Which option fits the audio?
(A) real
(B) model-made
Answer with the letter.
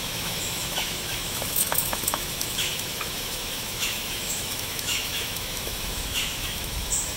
B